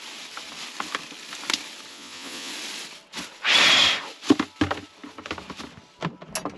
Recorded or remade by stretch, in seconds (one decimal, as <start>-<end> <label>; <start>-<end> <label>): 0.0-1.9 recorded; 1.9-2.5 remade; 2.5-6.6 recorded